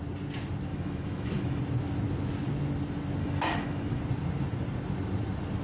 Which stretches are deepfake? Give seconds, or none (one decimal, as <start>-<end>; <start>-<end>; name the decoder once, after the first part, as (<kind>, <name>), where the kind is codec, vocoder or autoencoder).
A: 0.7-1.6 (autoencoder, DAC-VAE); 3.2-4.0